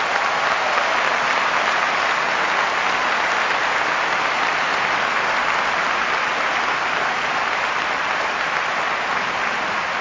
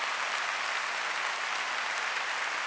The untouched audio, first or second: first